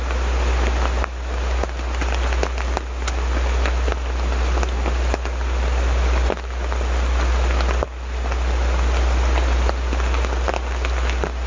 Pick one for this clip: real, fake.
real